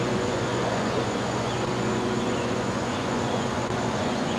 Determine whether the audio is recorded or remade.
remade